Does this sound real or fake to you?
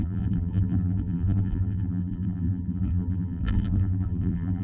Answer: fake